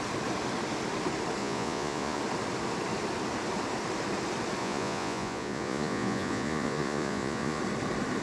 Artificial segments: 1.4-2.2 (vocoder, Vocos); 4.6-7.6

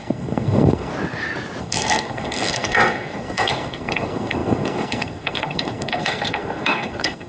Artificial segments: 0.0-0.9 (codec, SNAC); 1.6-7.3

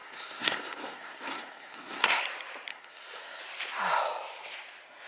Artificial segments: 0.0-2.2 (codec, SNAC); 2.7-3.4

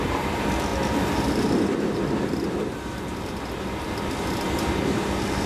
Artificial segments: 0.0-0.7 (vocoder, BigVGAN v2); 4.0-5.5

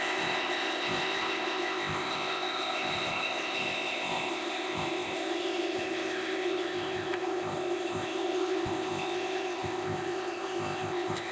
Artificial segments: 0.0-11.3 (codec, ZipCodec)